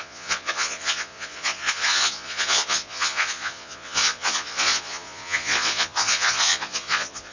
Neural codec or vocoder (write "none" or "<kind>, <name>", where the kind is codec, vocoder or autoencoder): vocoder, Vocos